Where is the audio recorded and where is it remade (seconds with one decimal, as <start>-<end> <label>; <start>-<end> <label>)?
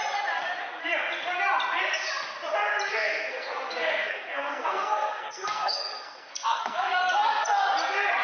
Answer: 0.0-2.9 recorded; 2.9-7.0 remade; 7.0-8.2 recorded